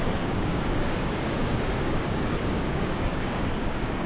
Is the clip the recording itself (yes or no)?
no